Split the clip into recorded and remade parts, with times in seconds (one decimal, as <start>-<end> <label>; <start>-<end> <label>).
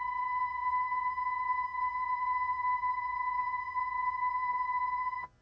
0.0-5.4 remade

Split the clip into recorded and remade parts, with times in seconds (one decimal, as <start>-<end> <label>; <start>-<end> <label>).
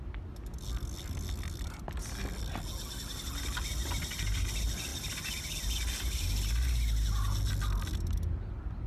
0.0-8.9 recorded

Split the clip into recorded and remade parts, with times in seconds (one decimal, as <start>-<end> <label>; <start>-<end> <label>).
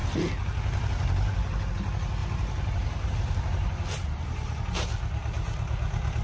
0.0-2.2 recorded; 2.2-4.6 remade; 4.6-6.2 recorded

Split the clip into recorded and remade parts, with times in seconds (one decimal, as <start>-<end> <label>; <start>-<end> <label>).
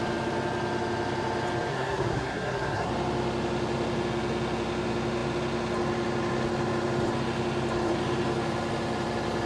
0.0-1.7 recorded; 1.7-2.9 remade; 2.9-9.5 recorded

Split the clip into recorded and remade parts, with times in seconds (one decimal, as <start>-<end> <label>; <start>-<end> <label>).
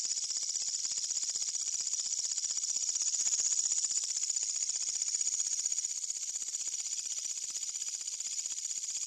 0.0-9.1 recorded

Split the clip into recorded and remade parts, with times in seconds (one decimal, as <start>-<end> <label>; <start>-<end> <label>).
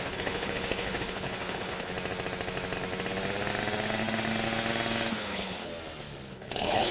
0.0-1.9 remade; 1.9-5.1 recorded; 5.1-5.7 remade; 5.7-6.3 recorded; 6.3-6.9 remade